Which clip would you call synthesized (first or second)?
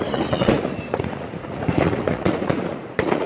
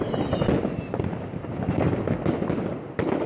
first